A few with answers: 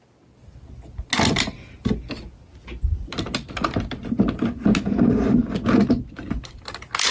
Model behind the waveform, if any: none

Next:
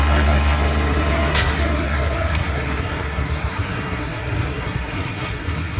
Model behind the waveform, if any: codec, SNAC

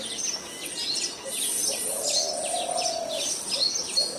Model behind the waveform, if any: none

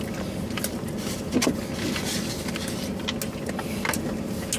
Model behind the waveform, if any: none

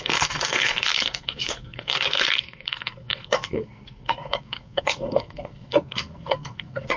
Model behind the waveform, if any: codec, SNAC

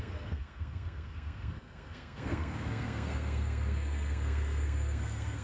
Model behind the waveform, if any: codec, SNAC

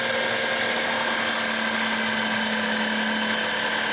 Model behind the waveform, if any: none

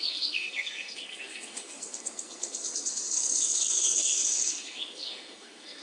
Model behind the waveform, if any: codec, SNAC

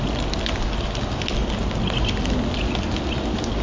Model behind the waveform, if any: none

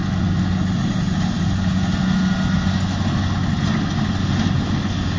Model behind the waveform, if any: none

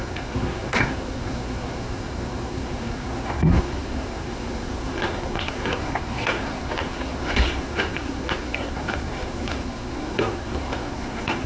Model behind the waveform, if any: codec, SNAC